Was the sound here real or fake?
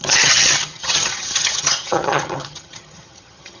fake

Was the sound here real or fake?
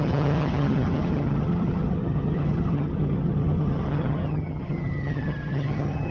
fake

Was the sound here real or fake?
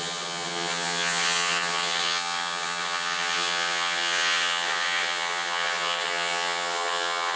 fake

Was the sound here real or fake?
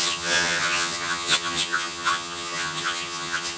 fake